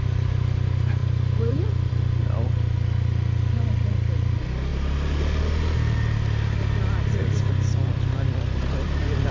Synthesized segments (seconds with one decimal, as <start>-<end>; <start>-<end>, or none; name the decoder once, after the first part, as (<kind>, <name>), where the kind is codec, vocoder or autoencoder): 1.0-1.9 (vocoder, BigVGAN v2); 6.8-9.3